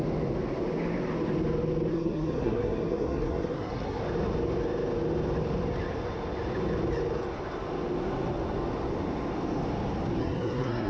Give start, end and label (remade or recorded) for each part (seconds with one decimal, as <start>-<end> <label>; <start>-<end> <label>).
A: 0.0-1.9 recorded; 1.9-4.0 remade; 4.0-10.2 recorded; 10.2-10.9 remade